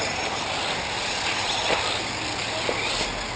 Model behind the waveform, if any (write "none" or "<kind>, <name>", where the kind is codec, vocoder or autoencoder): none